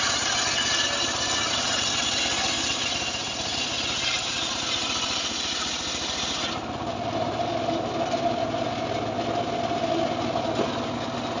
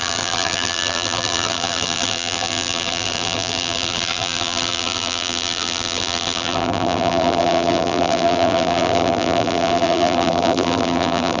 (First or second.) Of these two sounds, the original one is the first